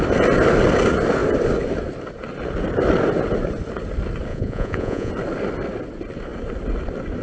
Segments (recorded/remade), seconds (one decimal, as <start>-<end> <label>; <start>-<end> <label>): 0.0-4.3 recorded; 4.3-5.1 remade; 5.1-7.2 recorded